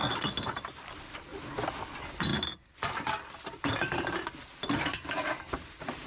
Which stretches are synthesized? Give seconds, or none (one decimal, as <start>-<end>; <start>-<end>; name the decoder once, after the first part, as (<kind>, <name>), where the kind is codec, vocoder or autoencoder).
none